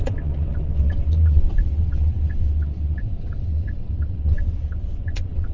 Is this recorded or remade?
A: remade